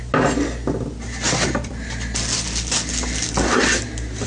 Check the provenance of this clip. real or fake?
real